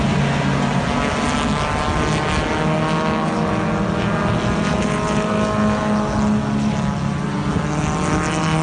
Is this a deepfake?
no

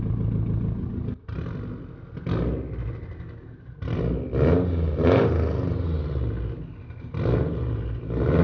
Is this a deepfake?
no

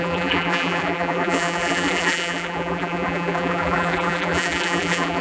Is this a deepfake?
yes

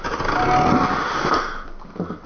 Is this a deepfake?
no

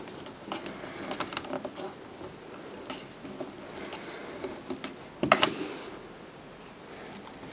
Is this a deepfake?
no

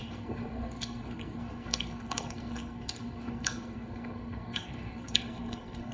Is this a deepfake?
yes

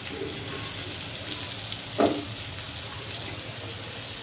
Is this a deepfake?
no